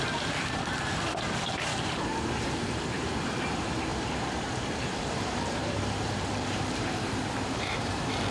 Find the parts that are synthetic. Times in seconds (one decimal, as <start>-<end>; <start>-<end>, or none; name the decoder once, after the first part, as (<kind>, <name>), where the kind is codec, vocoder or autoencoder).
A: 0.0-8.3 (vocoder, BigVGAN v2)